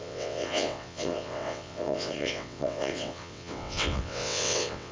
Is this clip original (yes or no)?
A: no